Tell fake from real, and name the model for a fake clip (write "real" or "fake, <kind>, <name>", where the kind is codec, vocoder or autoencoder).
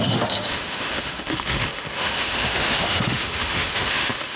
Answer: fake, autoencoder, DAC-VAE